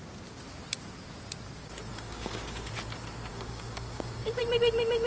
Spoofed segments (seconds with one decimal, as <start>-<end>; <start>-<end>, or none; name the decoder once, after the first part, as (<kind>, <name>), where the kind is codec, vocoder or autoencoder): 1.9-2.7 (codec, DAC); 3.3-4.4